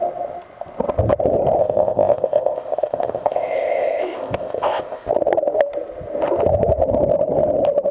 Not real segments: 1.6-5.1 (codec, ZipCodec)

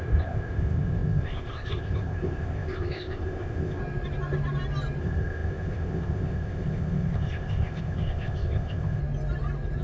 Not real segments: 0.0-3.8 (codec, ZipCodec); 5.0-9.0